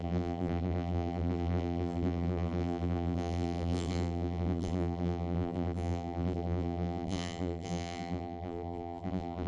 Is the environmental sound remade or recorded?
remade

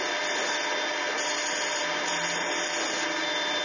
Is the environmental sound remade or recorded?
recorded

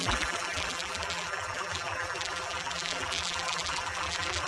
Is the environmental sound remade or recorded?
remade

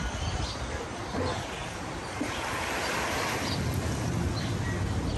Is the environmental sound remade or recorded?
recorded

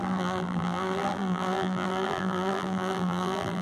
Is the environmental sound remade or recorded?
remade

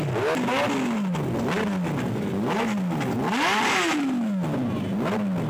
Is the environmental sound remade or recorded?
recorded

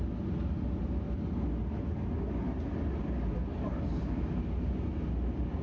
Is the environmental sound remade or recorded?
recorded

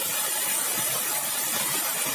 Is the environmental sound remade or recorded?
recorded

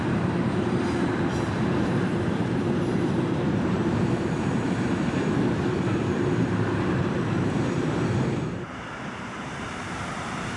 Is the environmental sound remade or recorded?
remade